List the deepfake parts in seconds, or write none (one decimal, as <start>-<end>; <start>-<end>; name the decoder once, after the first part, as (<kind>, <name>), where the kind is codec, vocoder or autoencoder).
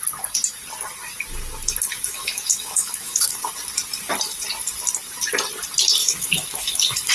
1.9-3.5 (autoencoder, DAC-VAE); 6.0-7.1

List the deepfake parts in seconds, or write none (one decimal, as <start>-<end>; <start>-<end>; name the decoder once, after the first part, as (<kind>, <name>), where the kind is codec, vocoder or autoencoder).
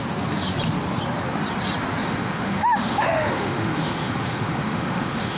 2.0-5.4 (autoencoder, DAC-VAE)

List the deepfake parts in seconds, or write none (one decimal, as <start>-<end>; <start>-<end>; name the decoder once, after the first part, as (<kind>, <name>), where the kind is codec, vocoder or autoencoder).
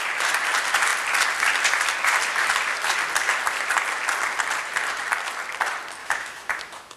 6.0-7.0 (autoencoder, DAC-VAE)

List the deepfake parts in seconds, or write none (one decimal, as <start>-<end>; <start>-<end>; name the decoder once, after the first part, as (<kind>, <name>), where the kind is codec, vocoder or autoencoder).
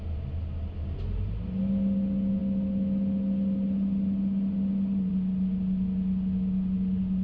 none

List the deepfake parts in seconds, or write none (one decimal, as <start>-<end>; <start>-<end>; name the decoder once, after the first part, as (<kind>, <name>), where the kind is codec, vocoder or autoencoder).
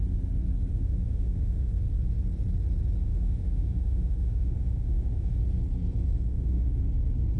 0.7-1.7 (autoencoder, DAC-VAE); 3.0-5.4; 6.3-6.8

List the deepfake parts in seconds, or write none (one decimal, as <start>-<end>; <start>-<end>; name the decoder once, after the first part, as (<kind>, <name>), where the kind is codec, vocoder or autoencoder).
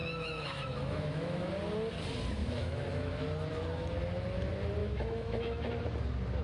0.0-1.5 (autoencoder, DAC-VAE); 2.4-3.2; 4.8-5.7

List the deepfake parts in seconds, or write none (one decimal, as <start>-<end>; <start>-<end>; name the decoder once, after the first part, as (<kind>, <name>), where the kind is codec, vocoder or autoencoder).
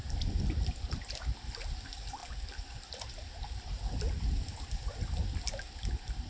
none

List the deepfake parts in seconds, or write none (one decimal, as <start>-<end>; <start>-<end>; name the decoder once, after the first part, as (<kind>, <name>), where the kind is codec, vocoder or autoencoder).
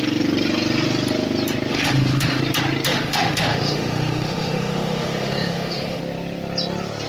1.7-2.4 (autoencoder, DAC-VAE); 2.9-6.0